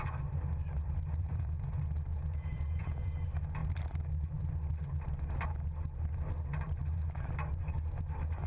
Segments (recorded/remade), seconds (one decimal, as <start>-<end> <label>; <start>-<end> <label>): 0.0-1.2 recorded; 1.2-1.7 remade; 1.7-2.1 recorded; 2.1-3.1 remade; 3.1-8.5 recorded